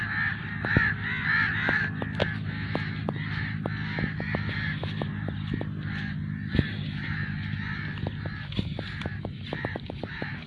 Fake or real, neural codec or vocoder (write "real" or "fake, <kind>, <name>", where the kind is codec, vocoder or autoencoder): real